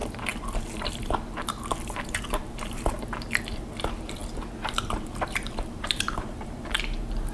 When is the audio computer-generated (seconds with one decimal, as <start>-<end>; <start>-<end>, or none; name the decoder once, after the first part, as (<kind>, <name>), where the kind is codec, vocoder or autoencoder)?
0.0-2.8 (vocoder, BigVGAN v2); 4.2-6.6

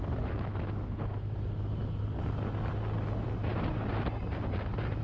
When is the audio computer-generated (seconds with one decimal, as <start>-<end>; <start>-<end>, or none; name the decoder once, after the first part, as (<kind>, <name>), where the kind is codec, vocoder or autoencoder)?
0.0-2.0 (autoencoder, DAC-VAE)

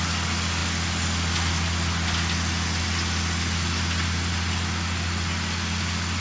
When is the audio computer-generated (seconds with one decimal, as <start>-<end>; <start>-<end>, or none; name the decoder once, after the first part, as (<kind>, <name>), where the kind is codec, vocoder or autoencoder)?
none

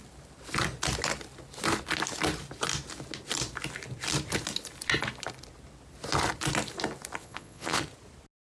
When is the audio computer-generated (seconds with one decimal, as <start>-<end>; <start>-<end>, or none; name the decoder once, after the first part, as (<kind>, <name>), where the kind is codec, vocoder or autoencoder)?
7.2-7.8 (vocoder, Vocos)

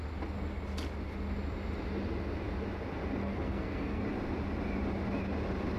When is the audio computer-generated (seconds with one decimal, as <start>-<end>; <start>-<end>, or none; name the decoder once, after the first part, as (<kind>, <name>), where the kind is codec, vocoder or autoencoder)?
3.2-4.0 (codec, SNAC)

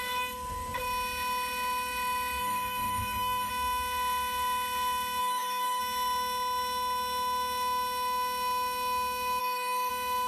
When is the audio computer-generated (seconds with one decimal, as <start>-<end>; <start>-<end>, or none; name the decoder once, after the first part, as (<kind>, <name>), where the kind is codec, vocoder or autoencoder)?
2.4-3.5 (autoencoder, DAC-VAE); 5.2-5.8; 9.4-9.9